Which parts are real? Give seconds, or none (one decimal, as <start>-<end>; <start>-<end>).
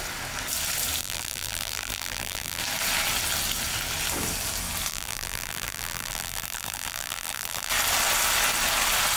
0.0-1.0; 2.6-4.9; 7.7-9.2